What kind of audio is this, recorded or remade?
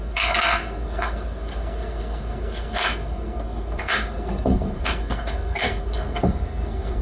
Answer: remade